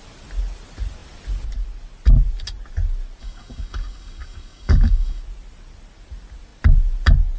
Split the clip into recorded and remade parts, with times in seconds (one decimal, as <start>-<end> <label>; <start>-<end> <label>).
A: 0.0-3.2 recorded; 3.2-5.2 remade; 5.2-7.4 recorded